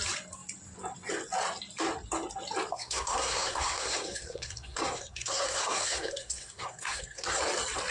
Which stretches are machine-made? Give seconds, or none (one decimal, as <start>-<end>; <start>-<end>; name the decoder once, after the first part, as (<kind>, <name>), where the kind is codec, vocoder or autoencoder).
2.7-7.4 (codec, SNAC)